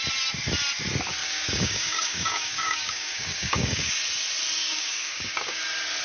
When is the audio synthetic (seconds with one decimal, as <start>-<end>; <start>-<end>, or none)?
1.2-3.9; 4.6-5.6

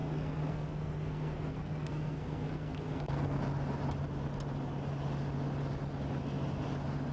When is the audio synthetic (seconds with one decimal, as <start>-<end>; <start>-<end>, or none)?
0.0-3.4

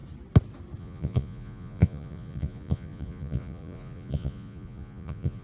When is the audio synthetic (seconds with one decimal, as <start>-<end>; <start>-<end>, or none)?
0.8-5.4